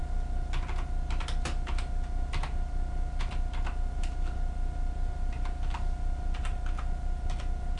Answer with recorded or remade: recorded